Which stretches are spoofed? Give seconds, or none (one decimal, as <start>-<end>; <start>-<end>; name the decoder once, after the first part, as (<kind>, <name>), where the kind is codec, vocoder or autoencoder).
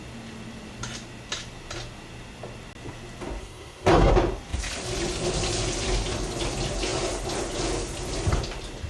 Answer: 3.4-4.1 (codec, SNAC)